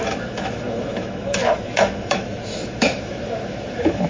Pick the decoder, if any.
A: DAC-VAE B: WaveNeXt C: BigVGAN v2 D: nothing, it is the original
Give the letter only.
A